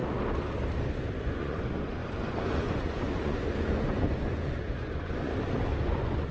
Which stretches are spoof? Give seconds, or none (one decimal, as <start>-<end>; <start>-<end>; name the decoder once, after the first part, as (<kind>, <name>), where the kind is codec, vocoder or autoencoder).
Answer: 1.2-5.3 (vocoder, Vocos); 5.8-6.3